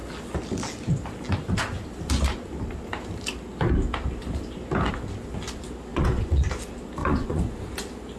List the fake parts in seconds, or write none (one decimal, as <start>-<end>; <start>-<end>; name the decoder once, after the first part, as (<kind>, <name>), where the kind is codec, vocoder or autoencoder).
5.9-6.5 (vocoder, Vocos); 7.0-7.5